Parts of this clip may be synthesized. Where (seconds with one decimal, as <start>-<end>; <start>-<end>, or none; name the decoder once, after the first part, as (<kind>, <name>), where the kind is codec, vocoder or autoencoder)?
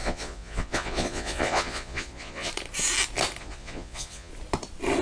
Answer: 0.0-2.5 (vocoder, Vocos); 3.4-4.3